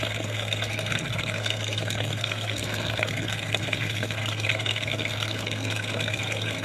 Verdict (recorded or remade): remade